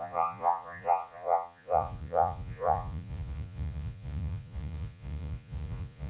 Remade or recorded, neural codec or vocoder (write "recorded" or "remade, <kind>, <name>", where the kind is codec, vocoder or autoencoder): remade, vocoder, Vocos